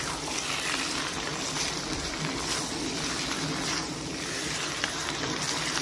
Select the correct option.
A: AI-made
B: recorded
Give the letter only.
B